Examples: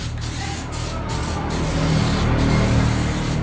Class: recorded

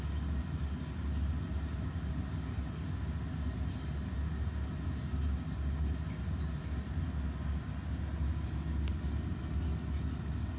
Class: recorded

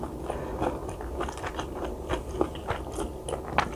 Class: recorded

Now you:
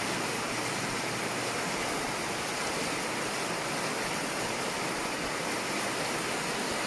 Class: recorded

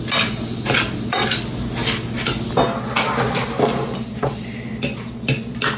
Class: recorded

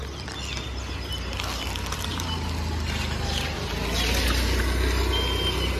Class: recorded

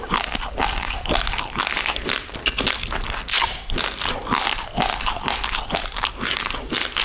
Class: recorded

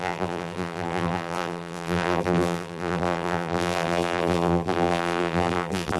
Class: remade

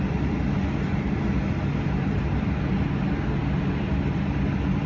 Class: recorded